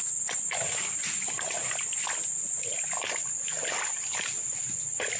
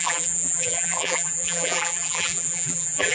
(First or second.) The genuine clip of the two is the first